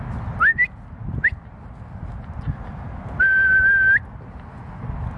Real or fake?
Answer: real